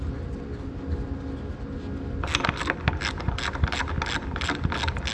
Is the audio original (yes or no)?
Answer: yes